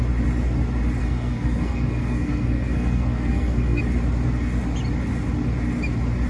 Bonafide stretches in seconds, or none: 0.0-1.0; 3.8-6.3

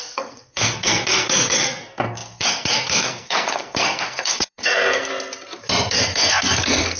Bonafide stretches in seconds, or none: 5.1-5.9

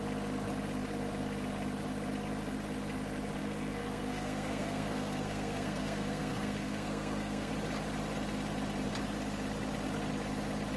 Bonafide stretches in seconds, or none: 0.0-3.4; 7.5-10.8